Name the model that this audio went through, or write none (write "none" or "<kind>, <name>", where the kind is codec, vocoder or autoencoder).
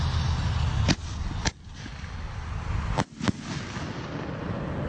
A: none